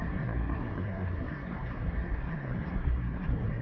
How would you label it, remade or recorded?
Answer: remade